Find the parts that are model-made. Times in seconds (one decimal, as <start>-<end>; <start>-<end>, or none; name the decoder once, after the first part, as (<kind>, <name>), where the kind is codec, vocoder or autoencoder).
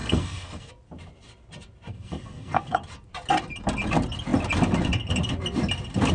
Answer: 0.0-0.7 (codec, SNAC); 1.9-2.8